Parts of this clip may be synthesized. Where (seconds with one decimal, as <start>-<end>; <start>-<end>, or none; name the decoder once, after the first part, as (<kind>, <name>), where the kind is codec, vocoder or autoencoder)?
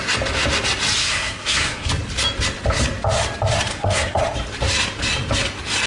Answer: 1.0-1.9 (codec, SNAC); 3.7-4.2